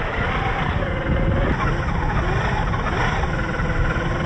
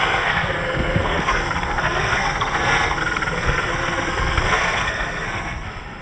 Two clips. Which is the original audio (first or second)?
first